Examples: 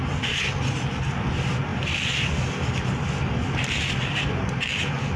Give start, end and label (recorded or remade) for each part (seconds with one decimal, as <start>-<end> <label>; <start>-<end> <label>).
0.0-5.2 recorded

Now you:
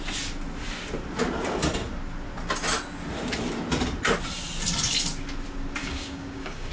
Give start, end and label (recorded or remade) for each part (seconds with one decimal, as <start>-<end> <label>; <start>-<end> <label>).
0.0-5.8 recorded; 5.8-6.7 remade

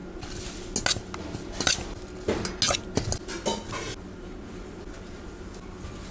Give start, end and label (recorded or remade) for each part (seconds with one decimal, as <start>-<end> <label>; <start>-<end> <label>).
0.0-6.1 recorded